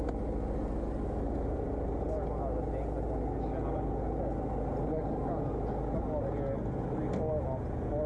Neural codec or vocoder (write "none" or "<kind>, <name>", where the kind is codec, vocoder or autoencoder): none